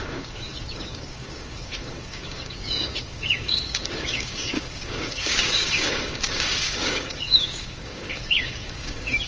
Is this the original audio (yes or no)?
no